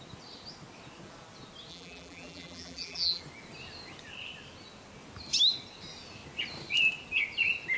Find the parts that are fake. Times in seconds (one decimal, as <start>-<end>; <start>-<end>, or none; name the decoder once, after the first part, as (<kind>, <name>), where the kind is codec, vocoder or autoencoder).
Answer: 1.7-3.2 (vocoder, BigVGAN v2)